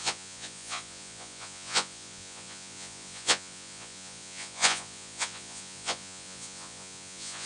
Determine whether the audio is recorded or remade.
remade